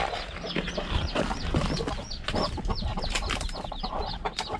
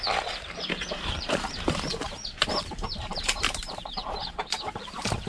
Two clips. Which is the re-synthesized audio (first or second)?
second